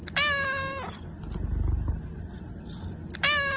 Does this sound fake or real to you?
real